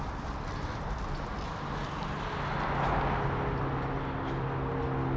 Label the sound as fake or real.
real